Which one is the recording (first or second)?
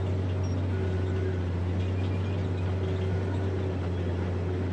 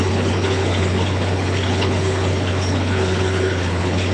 first